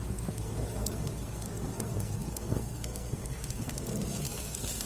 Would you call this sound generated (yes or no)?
yes